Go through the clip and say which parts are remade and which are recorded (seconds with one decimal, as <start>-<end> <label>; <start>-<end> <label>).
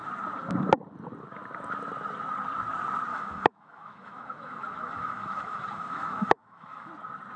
0.0-3.1 recorded; 3.1-6.9 remade; 6.9-7.4 recorded